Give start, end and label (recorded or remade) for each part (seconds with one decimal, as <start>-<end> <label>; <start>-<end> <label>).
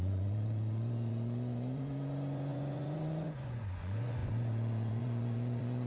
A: 0.0-5.9 remade